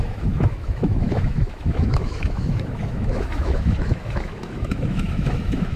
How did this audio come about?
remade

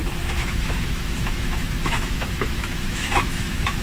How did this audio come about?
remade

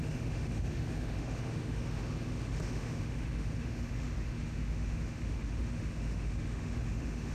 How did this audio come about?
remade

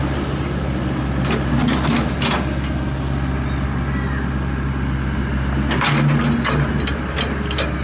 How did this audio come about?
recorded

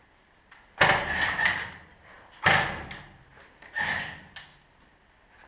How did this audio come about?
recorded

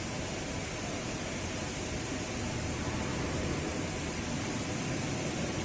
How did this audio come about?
recorded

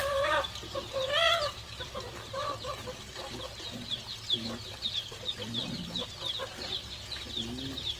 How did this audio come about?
recorded